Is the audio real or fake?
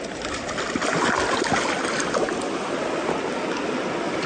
real